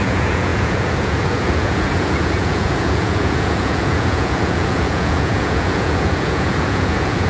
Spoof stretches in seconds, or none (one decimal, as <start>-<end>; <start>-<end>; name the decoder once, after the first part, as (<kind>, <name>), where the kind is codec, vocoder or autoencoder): 0.0-7.3 (vocoder, Vocos)